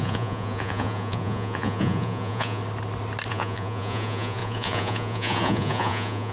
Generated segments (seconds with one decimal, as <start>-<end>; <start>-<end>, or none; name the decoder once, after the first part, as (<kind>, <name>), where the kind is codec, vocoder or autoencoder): 0.0-2.6 (vocoder, Vocos); 3.3-6.3